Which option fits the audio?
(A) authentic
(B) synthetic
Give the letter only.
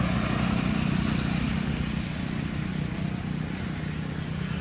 A